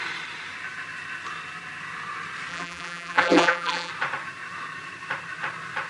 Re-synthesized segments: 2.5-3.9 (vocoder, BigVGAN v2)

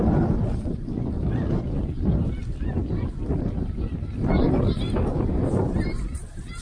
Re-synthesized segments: 5.1-6.6 (vocoder, BigVGAN v2)

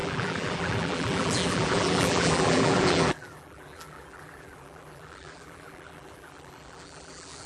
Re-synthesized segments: 0.0-7.5 (vocoder, BigVGAN v2)

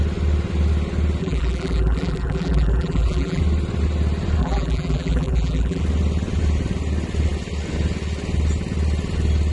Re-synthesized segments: 1.2-3.4 (vocoder, BigVGAN v2); 4.4-5.8